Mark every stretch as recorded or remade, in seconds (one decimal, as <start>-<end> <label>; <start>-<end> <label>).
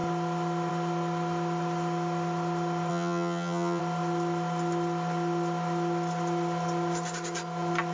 0.0-2.9 recorded; 2.9-3.8 remade; 3.8-7.9 recorded